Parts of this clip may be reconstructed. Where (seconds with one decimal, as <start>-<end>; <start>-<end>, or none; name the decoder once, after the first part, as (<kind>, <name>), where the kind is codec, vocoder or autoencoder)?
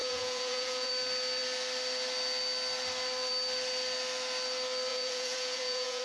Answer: 0.0-0.9 (vocoder, Vocos); 4.9-6.0